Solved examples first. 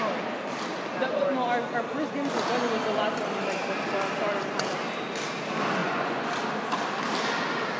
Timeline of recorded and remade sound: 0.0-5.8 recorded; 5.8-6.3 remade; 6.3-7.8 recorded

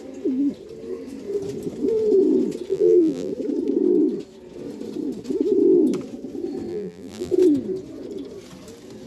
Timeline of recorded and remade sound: 0.0-2.7 recorded; 2.7-3.3 remade; 3.3-6.7 recorded; 6.7-7.3 remade; 7.3-9.1 recorded

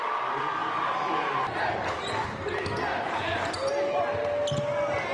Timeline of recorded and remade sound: 0.0-5.1 recorded

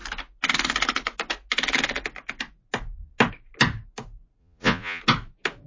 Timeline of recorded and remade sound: 0.0-4.4 recorded; 4.4-5.0 remade; 5.0-5.7 recorded

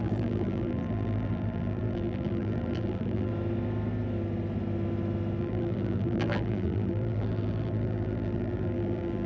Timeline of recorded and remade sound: 0.0-3.3 remade; 3.3-5.4 recorded; 5.4-9.3 remade

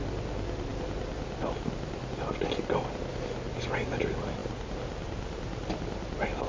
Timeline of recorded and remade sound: 0.0-6.5 recorded

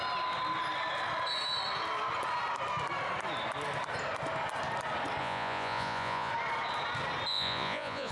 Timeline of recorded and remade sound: 0.0-5.2 recorded; 5.2-6.3 remade; 6.3-7.3 recorded; 7.3-8.1 remade